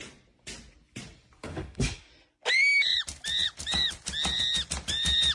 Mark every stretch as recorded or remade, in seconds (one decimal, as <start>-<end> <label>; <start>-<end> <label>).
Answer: 0.0-1.4 recorded; 1.4-2.1 remade; 2.1-5.3 recorded